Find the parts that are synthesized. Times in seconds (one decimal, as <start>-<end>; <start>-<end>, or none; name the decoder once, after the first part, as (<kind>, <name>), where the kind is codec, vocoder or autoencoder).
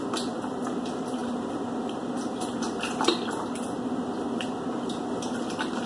none